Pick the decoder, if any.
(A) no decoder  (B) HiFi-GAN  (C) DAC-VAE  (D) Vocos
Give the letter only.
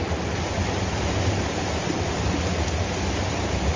A